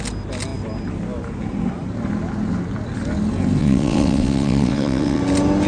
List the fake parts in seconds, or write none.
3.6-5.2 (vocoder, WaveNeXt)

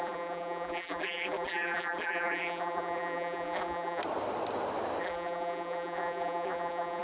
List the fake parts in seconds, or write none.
0.0-4.0 (vocoder, BigVGAN v2); 5.0-7.0

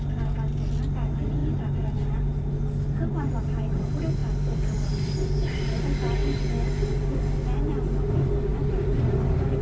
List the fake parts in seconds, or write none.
4.2-5.8 (vocoder, BigVGAN v2); 8.5-9.6

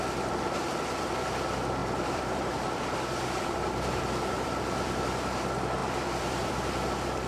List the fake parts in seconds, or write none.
1.8-4.0 (vocoder, BigVGAN v2); 5.8-6.5

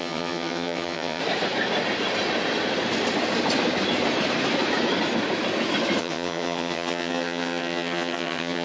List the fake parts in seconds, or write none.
0.0-1.2 (vocoder, HiFi-GAN); 6.0-8.6